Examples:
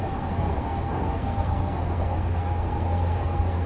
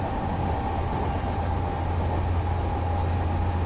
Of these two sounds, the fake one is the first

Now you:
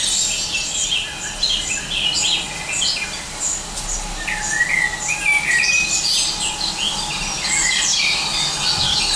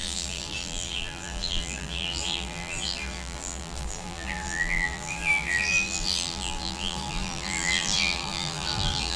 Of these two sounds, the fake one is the second